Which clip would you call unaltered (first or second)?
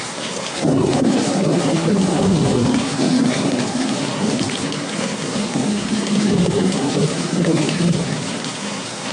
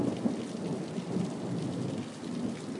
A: second